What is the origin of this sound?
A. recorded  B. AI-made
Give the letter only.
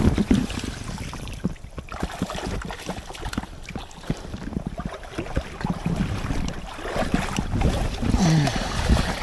A